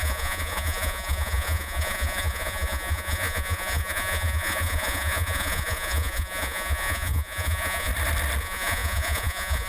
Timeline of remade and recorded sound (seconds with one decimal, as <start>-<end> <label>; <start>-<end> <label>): 0.0-7.9 remade; 7.9-8.4 recorded; 8.4-9.7 remade

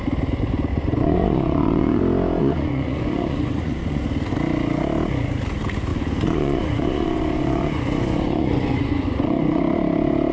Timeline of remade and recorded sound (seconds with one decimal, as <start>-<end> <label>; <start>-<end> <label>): 0.0-0.7 recorded; 0.7-2.0 remade; 2.0-2.4 recorded; 2.4-4.0 remade; 4.0-5.9 recorded; 5.9-9.6 remade; 9.6-10.3 recorded

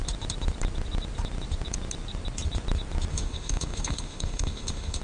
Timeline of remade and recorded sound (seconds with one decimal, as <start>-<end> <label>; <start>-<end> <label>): 0.0-3.1 recorded; 3.1-5.0 remade